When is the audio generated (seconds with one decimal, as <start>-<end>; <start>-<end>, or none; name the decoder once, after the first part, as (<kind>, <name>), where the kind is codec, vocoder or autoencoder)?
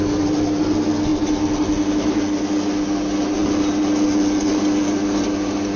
none